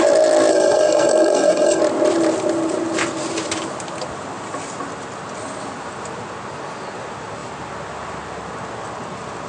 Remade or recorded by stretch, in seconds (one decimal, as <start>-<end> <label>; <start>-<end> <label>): 0.0-0.5 recorded; 0.5-1.8 remade; 1.8-9.5 recorded